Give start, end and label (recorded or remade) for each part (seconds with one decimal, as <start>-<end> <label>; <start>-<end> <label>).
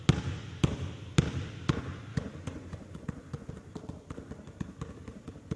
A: 0.0-2.1 recorded; 2.1-3.5 remade; 3.5-5.6 recorded